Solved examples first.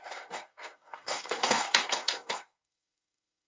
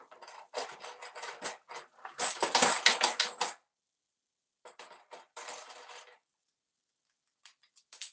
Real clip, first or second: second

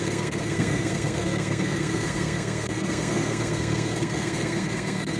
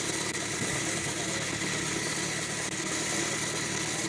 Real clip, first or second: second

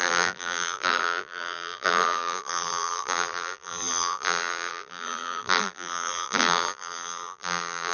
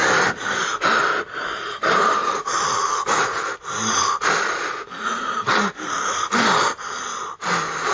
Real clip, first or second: second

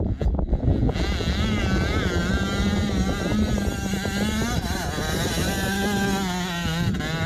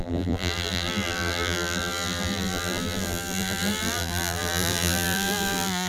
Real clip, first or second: first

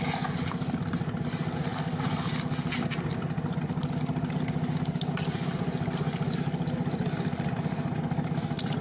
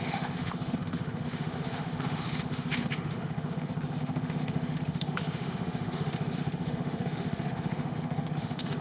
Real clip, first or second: first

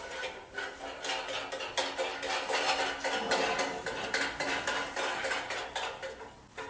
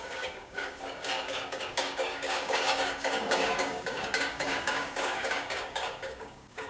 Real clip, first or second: first